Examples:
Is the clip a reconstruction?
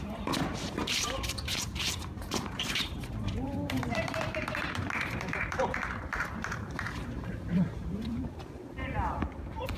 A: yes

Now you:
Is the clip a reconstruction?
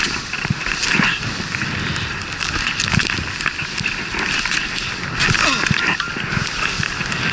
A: no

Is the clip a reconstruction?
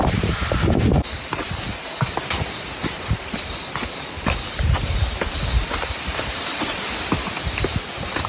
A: yes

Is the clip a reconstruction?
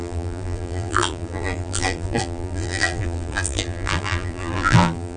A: yes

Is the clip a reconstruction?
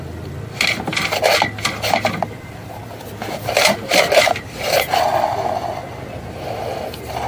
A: no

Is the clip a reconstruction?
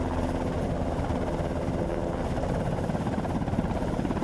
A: no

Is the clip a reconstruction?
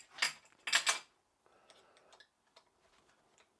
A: no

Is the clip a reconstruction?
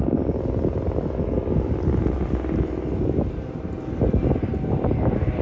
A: no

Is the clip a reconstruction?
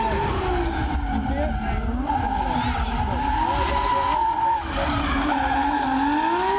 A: no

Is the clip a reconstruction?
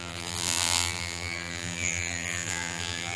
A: yes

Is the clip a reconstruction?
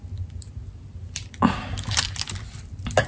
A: no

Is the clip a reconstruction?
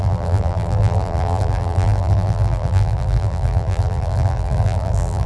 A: yes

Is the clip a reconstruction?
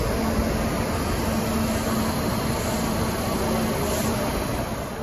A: no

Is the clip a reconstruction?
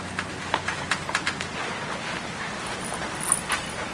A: no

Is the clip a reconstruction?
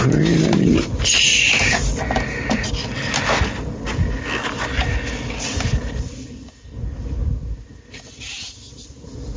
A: no